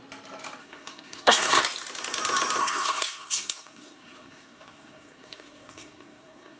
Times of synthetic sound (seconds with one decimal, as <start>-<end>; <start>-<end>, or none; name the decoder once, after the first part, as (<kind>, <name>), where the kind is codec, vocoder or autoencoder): 0.6-1.6 (codec, SNAC); 2.6-6.6